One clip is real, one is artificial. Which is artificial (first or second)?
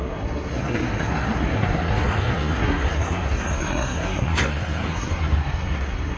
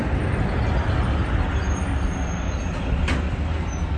first